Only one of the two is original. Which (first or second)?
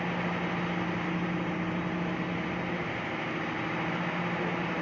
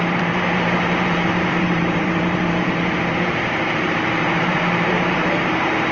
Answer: first